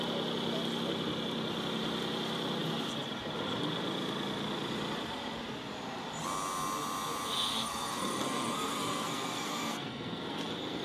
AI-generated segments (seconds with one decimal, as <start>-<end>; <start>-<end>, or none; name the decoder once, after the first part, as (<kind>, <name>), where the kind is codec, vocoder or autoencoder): 7.5-10.8 (codec, SNAC)